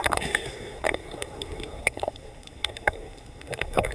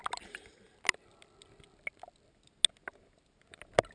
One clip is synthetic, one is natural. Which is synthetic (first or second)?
first